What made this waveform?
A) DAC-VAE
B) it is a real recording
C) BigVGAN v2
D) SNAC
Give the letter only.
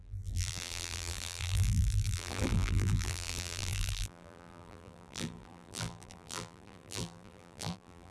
C